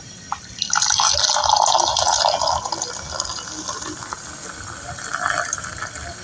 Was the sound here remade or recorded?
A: recorded